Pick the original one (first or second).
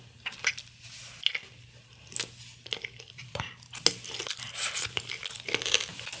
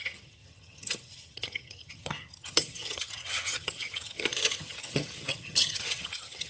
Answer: first